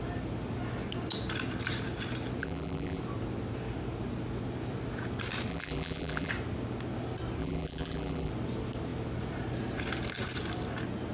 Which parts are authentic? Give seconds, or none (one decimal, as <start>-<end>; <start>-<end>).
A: 0.0-2.4; 3.0-5.5; 6.3-7.4; 8.3-11.1